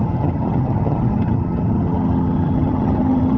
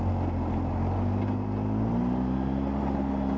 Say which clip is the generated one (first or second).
first